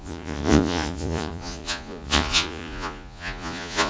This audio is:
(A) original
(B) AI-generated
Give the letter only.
B